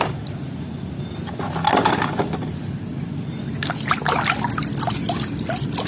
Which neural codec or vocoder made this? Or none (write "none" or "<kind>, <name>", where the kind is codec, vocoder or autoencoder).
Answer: none